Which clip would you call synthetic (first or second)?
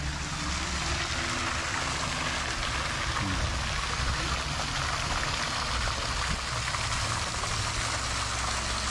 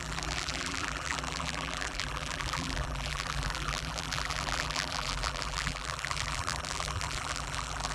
second